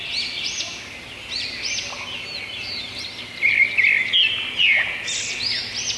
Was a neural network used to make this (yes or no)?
no